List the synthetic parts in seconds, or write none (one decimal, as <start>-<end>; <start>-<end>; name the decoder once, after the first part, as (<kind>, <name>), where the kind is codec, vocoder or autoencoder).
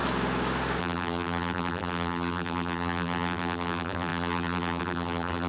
0.8-5.5 (vocoder, BigVGAN v2)